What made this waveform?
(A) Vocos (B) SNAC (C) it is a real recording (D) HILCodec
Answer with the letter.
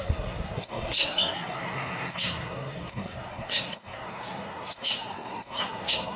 B